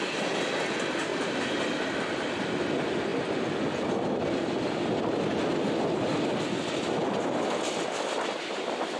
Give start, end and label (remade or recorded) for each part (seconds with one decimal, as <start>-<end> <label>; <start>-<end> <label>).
0.0-9.0 recorded